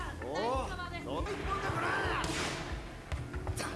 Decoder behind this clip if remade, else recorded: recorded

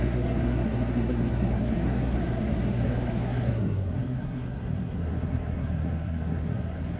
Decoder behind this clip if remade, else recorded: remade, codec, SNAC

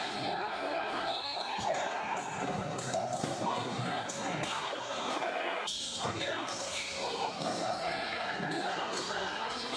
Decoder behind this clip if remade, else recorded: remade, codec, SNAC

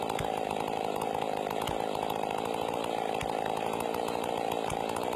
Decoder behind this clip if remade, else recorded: recorded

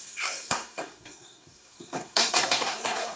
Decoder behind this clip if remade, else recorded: remade, codec, SNAC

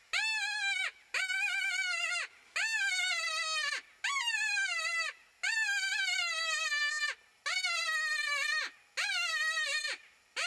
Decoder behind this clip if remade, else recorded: recorded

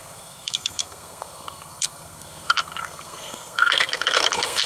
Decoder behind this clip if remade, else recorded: remade, codec, SNAC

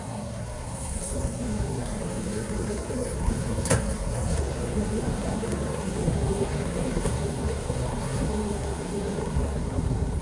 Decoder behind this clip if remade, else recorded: remade, codec, SNAC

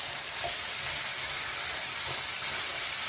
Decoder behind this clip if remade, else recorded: recorded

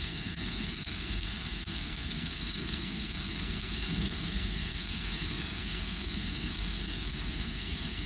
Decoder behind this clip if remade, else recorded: remade, codec, SNAC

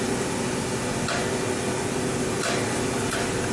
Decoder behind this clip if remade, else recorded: recorded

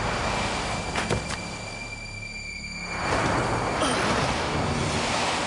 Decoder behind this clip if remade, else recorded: recorded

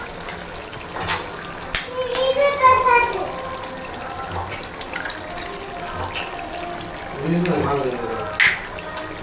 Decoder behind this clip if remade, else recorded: recorded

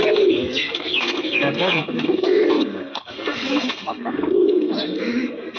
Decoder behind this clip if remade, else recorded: remade, codec, SNAC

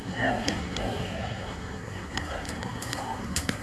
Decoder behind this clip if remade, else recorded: remade, codec, SNAC